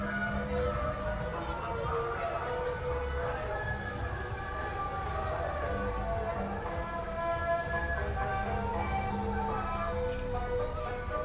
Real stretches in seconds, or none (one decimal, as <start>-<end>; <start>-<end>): 0.0-11.2